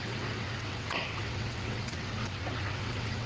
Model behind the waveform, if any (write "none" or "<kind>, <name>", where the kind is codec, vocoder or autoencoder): vocoder, WaveNeXt